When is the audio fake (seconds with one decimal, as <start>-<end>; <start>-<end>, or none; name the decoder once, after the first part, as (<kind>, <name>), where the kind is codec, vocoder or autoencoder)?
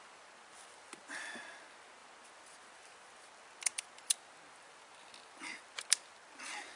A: none